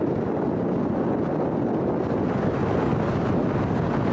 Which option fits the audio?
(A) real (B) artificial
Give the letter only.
A